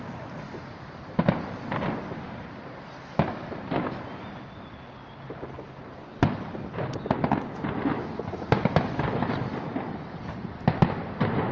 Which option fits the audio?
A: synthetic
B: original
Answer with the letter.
B